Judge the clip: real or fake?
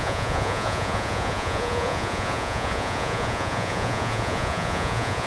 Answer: fake